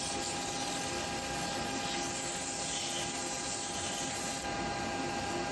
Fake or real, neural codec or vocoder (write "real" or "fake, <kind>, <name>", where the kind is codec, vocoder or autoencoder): real